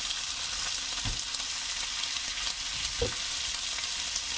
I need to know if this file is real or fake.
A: real